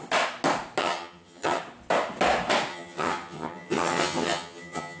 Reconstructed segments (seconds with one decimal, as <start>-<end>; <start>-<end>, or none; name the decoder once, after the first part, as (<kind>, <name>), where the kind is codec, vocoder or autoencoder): 0.8-1.6 (vocoder, HiFi-GAN); 2.7-5.0